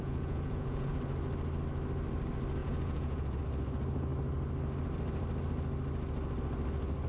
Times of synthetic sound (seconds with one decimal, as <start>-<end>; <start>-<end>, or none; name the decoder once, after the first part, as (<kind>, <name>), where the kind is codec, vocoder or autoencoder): 0.0-0.9 (vocoder, Vocos); 2.6-3.4